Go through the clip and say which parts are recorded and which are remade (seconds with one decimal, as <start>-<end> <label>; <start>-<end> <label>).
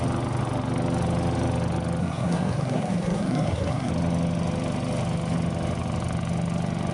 0.0-2.0 recorded; 2.0-3.9 remade; 3.9-6.9 recorded